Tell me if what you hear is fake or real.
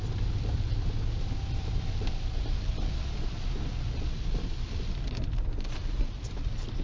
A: fake